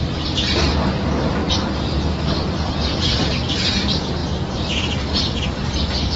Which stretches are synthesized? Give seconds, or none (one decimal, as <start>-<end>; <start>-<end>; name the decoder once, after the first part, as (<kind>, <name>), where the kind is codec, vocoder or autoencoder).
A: 0.0-1.4 (vocoder, BigVGAN v2); 2.2-4.2; 5.0-6.2